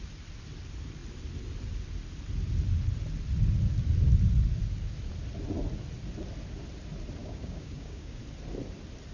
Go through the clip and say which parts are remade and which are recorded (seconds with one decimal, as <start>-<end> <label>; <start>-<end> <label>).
0.0-7.2 recorded; 7.2-8.2 remade; 8.2-9.1 recorded